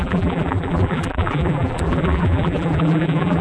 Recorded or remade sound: remade